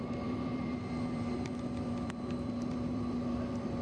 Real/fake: fake